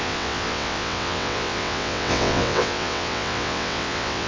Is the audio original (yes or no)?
no